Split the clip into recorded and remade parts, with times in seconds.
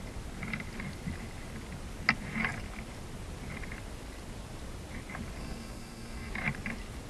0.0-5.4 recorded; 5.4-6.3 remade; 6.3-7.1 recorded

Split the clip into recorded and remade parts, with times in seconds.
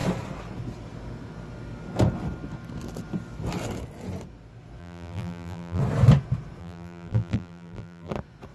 0.0-4.8 recorded; 4.8-5.8 remade; 5.8-6.6 recorded; 6.6-8.1 remade; 8.1-8.5 recorded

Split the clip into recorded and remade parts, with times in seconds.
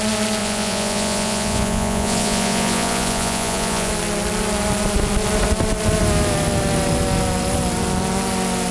0.0-0.4 recorded; 0.4-3.9 remade; 3.9-8.7 recorded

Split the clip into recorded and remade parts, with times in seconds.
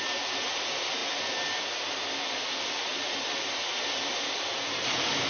0.0-1.0 recorded; 1.0-2.0 remade; 2.0-2.9 recorded; 2.9-3.8 remade; 3.8-5.3 recorded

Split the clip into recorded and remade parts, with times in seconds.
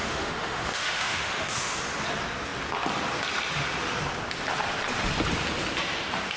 0.0-1.8 remade; 1.8-6.4 recorded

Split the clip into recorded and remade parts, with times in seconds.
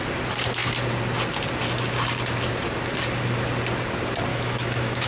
0.0-4.3 recorded; 4.3-5.1 remade